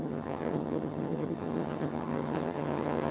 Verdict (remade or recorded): remade